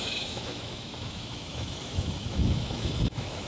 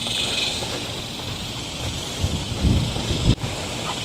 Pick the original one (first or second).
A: second